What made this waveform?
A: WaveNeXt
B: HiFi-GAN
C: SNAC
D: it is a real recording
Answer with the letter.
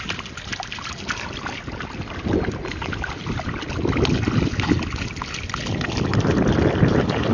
D